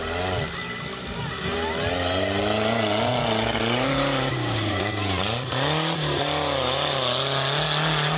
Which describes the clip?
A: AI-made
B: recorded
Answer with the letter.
B